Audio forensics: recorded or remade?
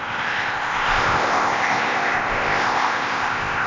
remade